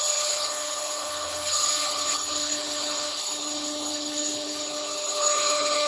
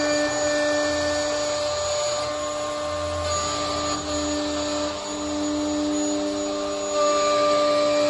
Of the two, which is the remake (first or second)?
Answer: first